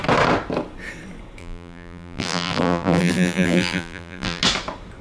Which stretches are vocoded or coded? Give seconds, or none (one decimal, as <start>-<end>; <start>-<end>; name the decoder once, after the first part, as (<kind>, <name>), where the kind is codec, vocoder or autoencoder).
1.4-4.4 (vocoder, BigVGAN v2)